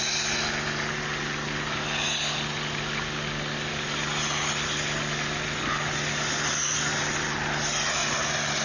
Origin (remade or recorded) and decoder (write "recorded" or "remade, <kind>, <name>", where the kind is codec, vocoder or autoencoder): recorded